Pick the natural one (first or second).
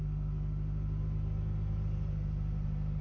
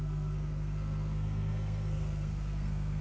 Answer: first